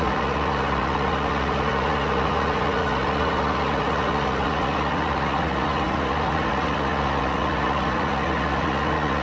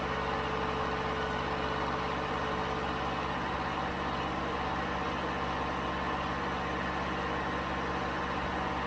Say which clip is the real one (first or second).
second